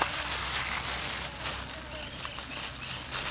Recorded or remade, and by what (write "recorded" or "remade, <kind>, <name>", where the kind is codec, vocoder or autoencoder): recorded